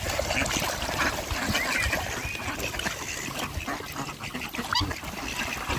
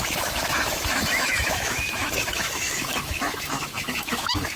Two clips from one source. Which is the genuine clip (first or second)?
first